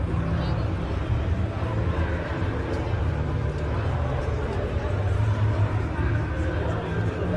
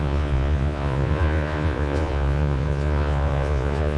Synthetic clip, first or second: second